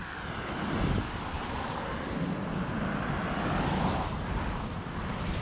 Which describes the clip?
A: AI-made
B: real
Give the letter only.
B